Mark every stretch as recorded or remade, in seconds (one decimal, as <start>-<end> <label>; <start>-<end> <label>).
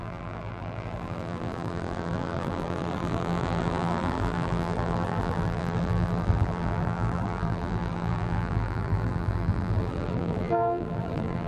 0.0-11.5 remade